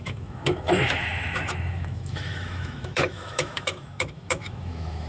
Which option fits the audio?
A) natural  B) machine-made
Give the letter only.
B